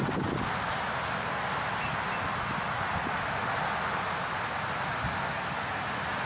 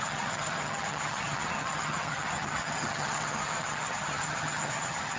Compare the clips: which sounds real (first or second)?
first